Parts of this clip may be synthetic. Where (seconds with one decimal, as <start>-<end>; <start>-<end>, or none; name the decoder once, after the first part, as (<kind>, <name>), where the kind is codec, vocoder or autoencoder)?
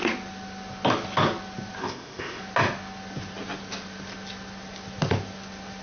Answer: 1.8-2.4 (codec, ZipCodec)